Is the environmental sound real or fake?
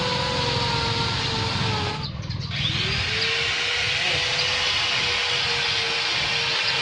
real